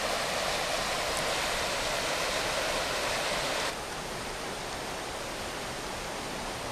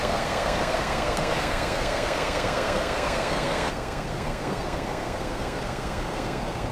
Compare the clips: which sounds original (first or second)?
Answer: first